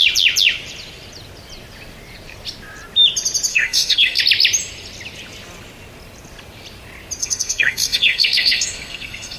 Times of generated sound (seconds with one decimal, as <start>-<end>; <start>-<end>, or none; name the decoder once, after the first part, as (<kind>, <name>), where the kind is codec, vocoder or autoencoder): 3.5-4.2 (codec, SNAC); 7.2-9.4